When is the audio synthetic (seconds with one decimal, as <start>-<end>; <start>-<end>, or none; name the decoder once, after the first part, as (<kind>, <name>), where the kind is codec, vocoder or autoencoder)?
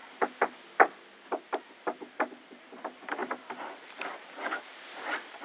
none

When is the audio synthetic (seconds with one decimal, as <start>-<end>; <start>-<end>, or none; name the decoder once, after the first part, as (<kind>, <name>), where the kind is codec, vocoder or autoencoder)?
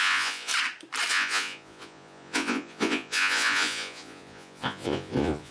0.0-0.5 (vocoder, Vocos); 1.1-5.5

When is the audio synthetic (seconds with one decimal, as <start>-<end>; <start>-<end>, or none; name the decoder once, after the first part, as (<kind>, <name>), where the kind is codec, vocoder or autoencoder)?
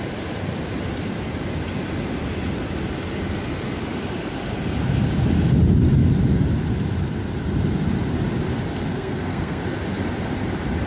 8.9-9.6 (codec, SNAC)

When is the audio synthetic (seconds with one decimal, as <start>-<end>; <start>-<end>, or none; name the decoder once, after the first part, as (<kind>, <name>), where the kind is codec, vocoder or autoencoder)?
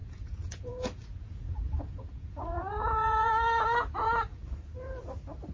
0.0-3.3 (vocoder, Vocos); 4.3-5.0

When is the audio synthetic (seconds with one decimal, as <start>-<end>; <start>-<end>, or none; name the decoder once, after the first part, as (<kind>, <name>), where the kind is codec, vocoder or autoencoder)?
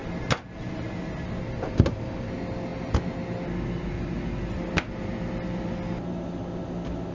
none